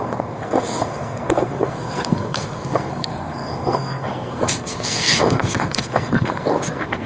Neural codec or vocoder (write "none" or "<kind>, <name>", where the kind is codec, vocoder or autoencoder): codec, SNAC